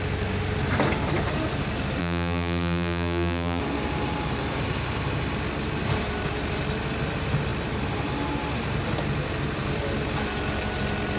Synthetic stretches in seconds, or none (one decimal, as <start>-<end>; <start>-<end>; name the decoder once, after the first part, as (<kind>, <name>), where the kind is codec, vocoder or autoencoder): 2.0-3.6 (vocoder, BigVGAN v2)